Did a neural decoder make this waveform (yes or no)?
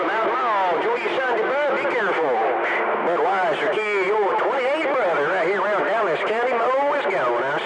no